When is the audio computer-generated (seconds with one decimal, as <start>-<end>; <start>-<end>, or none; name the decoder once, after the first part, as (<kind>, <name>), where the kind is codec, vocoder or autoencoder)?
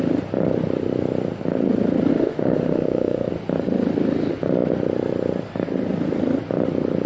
2.1-3.3 (autoencoder, DAC-VAE)